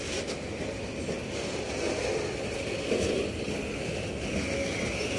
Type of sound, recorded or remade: recorded